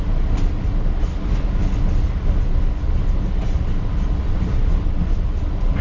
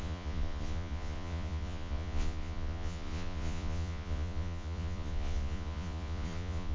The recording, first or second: first